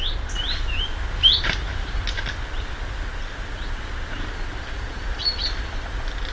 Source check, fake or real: real